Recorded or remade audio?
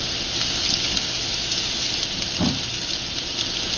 recorded